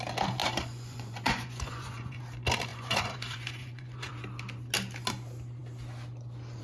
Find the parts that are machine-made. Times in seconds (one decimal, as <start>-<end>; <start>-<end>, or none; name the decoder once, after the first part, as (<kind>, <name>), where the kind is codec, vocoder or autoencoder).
0.4-2.2 (vocoder, Vocos); 2.7-4.1